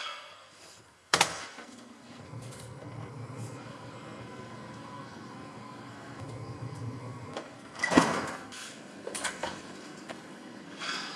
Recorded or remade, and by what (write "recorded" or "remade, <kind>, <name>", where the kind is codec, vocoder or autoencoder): remade, codec, SNAC